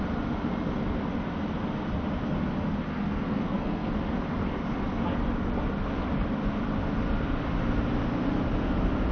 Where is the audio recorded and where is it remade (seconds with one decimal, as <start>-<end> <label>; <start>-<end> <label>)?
0.0-2.9 recorded; 2.9-3.9 remade; 3.9-9.1 recorded